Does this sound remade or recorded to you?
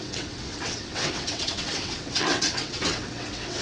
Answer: remade